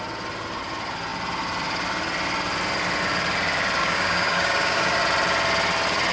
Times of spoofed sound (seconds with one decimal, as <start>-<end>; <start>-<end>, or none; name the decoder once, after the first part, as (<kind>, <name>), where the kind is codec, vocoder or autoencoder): 3.8-5.0 (codec, DAC)